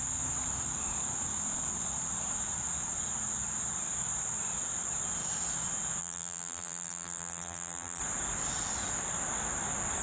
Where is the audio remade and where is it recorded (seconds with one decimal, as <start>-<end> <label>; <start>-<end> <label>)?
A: 0.0-6.0 recorded; 6.0-8.0 remade; 8.0-10.0 recorded